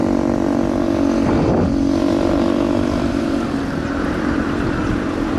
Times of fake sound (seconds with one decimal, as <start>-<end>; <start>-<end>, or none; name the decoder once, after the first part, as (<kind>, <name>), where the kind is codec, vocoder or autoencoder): 3.2-5.4 (vocoder, BigVGAN v2)